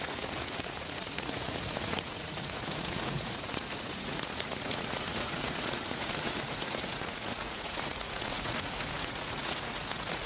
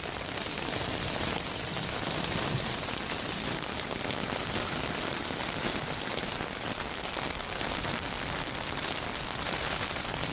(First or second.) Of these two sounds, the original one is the second